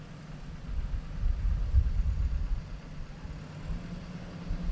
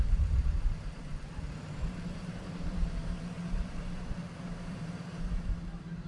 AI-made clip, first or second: second